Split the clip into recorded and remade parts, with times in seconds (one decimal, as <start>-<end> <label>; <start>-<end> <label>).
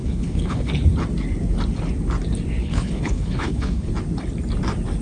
0.0-0.7 remade; 0.7-2.6 recorded; 2.6-3.9 remade; 3.9-5.0 recorded